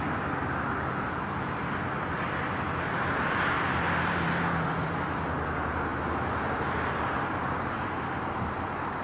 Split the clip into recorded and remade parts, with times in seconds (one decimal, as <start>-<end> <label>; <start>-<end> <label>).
0.0-5.9 remade; 5.9-7.0 recorded; 7.0-9.0 remade

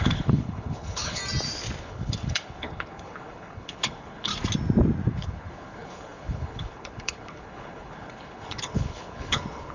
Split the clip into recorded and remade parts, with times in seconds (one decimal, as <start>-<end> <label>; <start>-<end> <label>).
0.0-1.2 remade; 1.2-1.8 recorded; 1.8-4.3 remade; 4.3-5.1 recorded; 5.1-9.7 remade